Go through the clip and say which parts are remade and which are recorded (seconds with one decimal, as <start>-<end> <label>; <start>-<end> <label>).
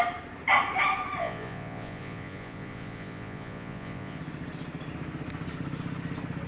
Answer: 0.0-1.2 recorded; 1.2-4.2 remade; 4.2-6.5 recorded